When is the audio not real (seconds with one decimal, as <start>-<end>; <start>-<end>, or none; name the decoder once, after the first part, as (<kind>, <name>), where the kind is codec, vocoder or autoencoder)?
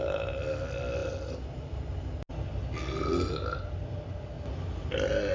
none